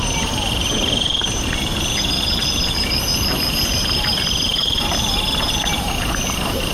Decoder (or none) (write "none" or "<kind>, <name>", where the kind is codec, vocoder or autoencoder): vocoder, BigVGAN v2